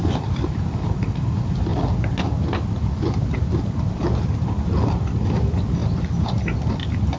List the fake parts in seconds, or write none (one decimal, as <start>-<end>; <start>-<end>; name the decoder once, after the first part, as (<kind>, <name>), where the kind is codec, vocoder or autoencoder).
0.0-1.7 (vocoder, BigVGAN v2); 3.6-5.8; 6.6-7.2